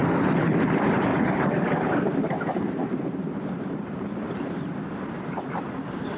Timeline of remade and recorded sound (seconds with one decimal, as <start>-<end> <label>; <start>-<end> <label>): 0.0-1.1 recorded; 1.1-4.8 remade; 4.8-6.2 recorded